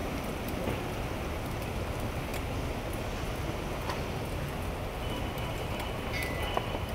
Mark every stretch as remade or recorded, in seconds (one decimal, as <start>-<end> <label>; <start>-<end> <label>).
0.0-2.3 remade; 2.3-5.4 recorded; 5.4-6.9 remade